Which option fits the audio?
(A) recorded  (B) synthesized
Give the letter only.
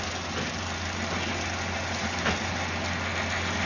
A